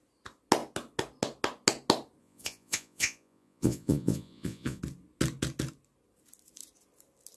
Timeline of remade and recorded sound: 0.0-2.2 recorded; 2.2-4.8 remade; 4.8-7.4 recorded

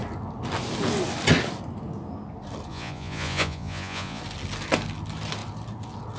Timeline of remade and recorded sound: 0.0-2.7 recorded; 2.7-4.2 remade; 4.2-6.2 recorded